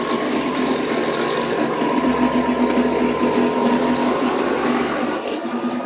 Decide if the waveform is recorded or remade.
recorded